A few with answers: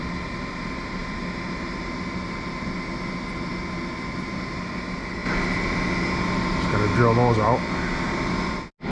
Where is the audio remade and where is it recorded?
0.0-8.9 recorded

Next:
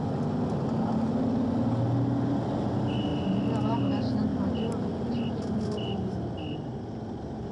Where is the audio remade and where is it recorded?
0.0-7.5 recorded

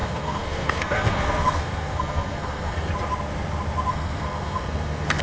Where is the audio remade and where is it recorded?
0.0-2.9 remade; 2.9-3.9 recorded; 3.9-5.2 remade